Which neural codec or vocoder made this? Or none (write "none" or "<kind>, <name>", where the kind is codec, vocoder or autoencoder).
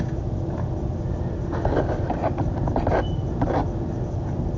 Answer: none